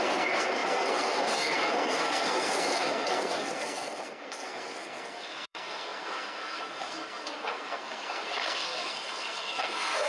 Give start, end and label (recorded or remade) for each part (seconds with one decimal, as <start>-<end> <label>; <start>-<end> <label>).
0.0-10.1 remade